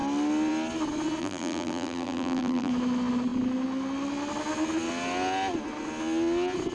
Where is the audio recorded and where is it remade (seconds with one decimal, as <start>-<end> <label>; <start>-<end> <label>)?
0.0-1.2 recorded; 1.2-2.7 remade; 2.7-6.7 recorded